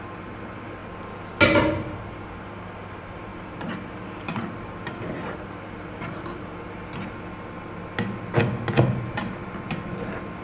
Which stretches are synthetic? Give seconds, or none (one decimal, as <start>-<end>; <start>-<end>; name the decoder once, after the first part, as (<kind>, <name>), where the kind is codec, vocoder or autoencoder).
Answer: 0.0-0.8 (vocoder, BigVGAN v2); 2.4-6.5; 8.9-9.4